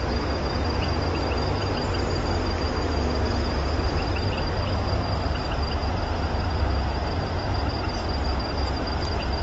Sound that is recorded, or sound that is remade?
recorded